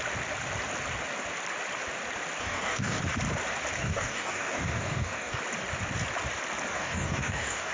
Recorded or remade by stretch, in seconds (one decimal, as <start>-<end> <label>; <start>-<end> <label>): 0.0-2.4 recorded; 2.4-3.0 remade; 3.0-3.8 recorded; 3.8-5.4 remade; 5.4-6.7 recorded; 6.7-7.7 remade